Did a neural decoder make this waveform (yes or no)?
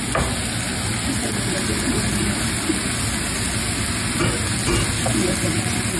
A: no